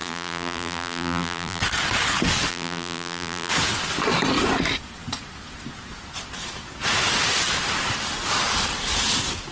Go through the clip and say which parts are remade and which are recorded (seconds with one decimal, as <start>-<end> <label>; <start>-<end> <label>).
0.0-1.6 remade; 1.6-2.5 recorded; 2.5-3.5 remade; 3.5-9.5 recorded